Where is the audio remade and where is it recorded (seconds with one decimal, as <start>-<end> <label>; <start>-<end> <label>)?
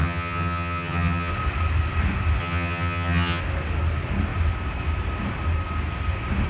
0.0-1.3 remade; 1.3-2.4 recorded; 2.4-3.4 remade; 3.4-6.5 recorded